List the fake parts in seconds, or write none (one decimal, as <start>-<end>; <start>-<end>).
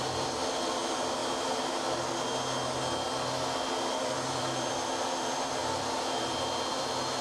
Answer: 0.0-1.2; 3.9-7.2